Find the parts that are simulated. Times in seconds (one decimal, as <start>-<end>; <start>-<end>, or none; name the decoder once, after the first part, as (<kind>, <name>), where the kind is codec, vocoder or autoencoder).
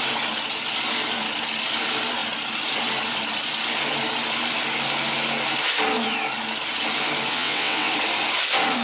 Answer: 7.3-7.9 (vocoder, WaveNeXt)